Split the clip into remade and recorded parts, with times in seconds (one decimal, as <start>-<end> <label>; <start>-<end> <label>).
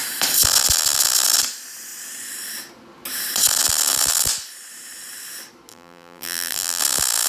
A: 0.0-5.7 recorded; 5.7-6.8 remade; 6.8-7.3 recorded